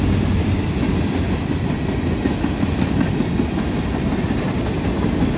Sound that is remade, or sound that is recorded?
recorded